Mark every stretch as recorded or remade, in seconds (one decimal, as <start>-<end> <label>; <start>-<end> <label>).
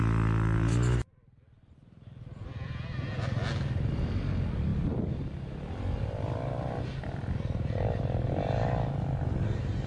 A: 0.0-4.7 recorded; 4.7-7.3 remade; 7.3-9.9 recorded